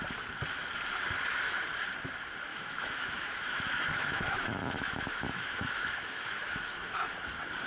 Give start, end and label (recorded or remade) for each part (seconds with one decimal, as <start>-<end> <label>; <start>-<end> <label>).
0.0-2.5 recorded; 2.5-7.1 remade; 7.1-7.7 recorded